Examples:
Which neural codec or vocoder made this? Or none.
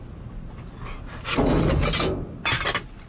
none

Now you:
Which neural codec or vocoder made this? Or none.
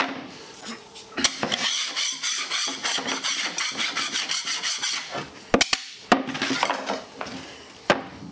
none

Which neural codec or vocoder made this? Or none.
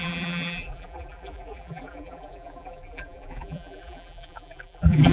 vocoder, BigVGAN v2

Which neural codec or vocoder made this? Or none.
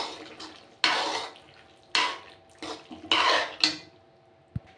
none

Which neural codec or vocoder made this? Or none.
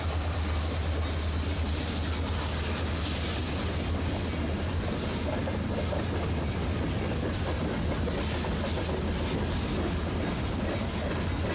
none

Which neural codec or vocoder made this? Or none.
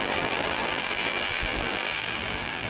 vocoder, BigVGAN v2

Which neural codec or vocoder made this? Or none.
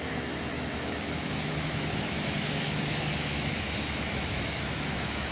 autoencoder, DAC-VAE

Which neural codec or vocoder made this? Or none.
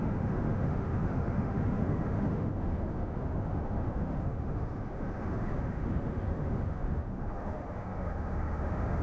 autoencoder, DAC-VAE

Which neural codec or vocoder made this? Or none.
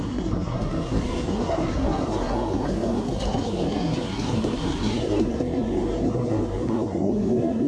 codec, SNAC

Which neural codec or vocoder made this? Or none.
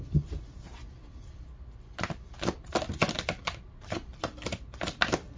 none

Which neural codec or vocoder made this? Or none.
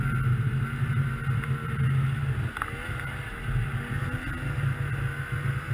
none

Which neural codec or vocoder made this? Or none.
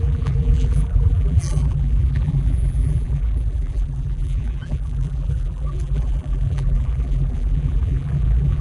vocoder, BigVGAN v2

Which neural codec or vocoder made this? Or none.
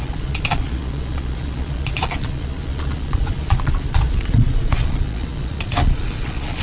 vocoder, Vocos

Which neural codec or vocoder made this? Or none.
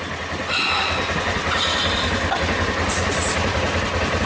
none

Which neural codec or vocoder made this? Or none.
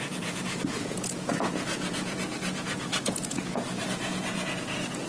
vocoder, Vocos